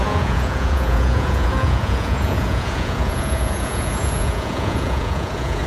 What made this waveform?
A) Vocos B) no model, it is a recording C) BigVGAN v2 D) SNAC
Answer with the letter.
A